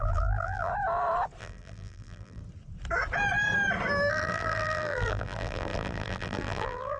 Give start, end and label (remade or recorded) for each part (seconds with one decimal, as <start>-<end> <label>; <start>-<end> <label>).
0.0-0.7 remade; 0.7-1.4 recorded; 1.4-2.4 remade; 2.4-4.1 recorded; 4.1-7.0 remade